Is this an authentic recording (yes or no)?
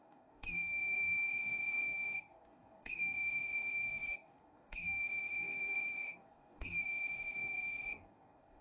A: no